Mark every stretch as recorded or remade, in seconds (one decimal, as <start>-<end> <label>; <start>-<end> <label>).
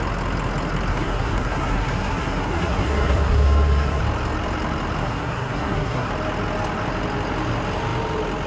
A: 0.0-0.9 recorded; 0.9-4.0 remade; 4.0-5.0 recorded; 5.0-6.1 remade; 6.1-8.5 recorded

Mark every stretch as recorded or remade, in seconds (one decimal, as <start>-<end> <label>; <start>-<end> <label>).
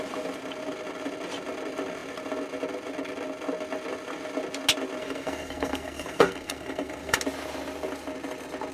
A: 0.0-5.0 recorded; 5.0-7.2 remade; 7.2-8.7 recorded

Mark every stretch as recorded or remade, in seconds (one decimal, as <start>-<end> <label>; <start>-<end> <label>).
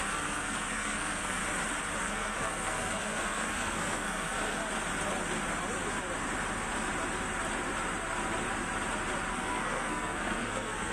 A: 0.0-1.4 remade; 1.4-2.0 recorded; 2.0-4.6 remade; 4.6-9.3 recorded; 9.3-10.9 remade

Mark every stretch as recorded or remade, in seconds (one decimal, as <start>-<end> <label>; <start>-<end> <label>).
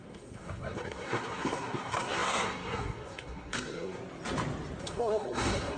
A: 0.0-4.0 remade; 4.0-4.8 recorded; 4.8-5.8 remade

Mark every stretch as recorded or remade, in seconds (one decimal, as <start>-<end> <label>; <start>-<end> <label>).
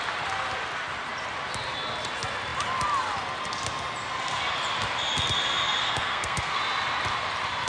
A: 0.0-5.8 recorded; 5.8-6.6 remade; 6.6-7.7 recorded